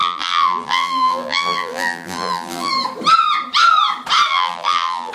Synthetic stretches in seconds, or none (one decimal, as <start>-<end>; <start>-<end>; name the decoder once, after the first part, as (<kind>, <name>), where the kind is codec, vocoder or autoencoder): 0.0-2.7 (vocoder, BigVGAN v2); 4.3-5.1